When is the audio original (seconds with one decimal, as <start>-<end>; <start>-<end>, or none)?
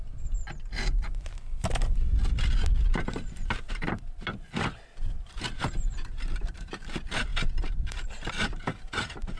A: 0.4-5.6